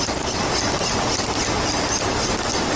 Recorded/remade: recorded